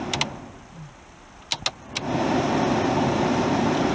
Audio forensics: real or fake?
real